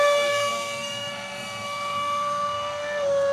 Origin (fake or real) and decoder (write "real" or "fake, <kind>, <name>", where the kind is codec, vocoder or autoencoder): fake, codec, SNAC